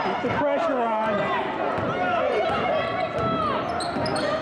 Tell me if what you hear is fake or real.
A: real